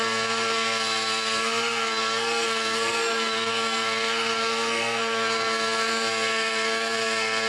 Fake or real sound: fake